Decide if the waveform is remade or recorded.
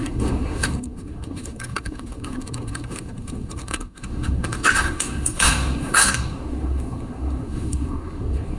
remade